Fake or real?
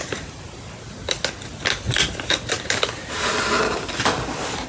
real